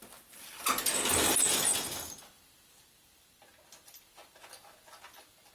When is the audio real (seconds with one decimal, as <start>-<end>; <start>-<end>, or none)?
0.0-5.5